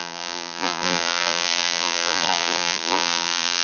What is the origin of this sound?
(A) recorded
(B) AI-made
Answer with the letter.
B